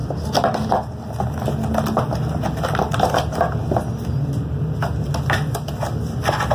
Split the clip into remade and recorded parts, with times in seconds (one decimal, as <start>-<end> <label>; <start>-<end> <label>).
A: 0.0-3.0 remade; 3.0-6.5 recorded